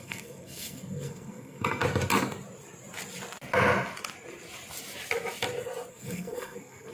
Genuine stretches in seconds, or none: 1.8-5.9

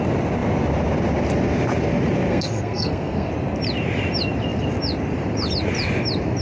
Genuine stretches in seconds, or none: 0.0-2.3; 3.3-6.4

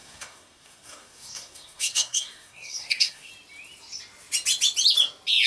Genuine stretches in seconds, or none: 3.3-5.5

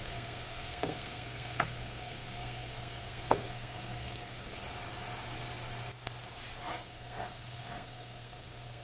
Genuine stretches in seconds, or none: 4.6-6.7

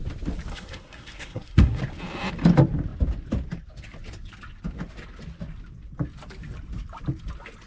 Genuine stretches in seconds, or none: 0.0-0.5; 1.8-7.7